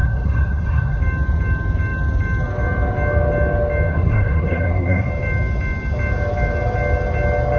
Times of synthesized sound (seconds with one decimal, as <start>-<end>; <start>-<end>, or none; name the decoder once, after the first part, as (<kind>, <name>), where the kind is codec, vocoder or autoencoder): 0.0-1.0 (codec, SNAC); 3.9-5.1